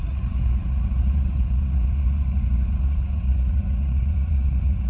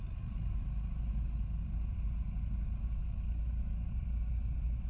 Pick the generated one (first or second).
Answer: first